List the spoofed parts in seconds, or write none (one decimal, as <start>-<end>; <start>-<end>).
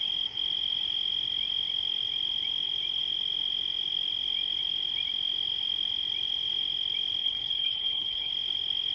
7.2-8.3